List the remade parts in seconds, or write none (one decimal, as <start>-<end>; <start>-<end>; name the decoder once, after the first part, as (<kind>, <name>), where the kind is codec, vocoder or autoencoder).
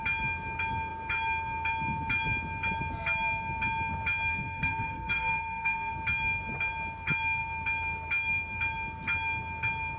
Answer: 4.3-5.9 (codec, SNAC)